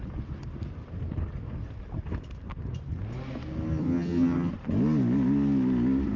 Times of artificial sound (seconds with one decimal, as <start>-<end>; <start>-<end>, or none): 3.8-4.5